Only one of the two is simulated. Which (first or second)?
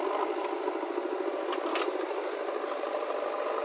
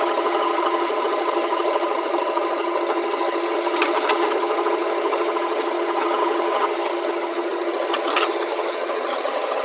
second